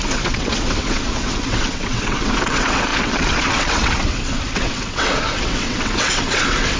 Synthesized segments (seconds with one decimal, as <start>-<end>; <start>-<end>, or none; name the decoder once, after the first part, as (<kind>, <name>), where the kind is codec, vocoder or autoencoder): 0.0-6.8 (vocoder, WaveNeXt)